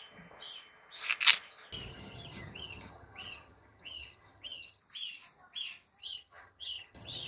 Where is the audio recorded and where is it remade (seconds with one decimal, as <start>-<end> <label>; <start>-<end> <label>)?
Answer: 0.0-1.9 recorded; 1.9-4.8 remade; 4.8-6.0 recorded; 6.0-7.3 remade